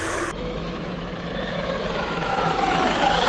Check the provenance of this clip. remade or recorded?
remade